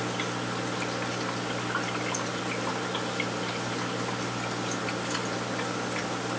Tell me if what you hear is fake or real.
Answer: real